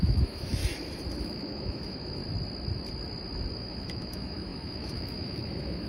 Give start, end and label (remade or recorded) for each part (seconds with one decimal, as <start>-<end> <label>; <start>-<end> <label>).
0.0-0.6 remade; 0.6-1.2 recorded; 1.2-2.2 remade; 2.2-3.5 recorded; 3.5-5.9 remade